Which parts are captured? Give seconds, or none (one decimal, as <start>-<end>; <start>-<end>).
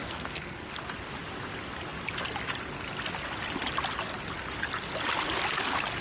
0.7-6.0